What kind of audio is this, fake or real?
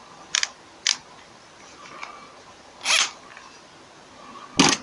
real